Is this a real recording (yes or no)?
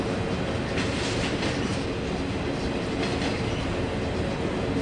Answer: yes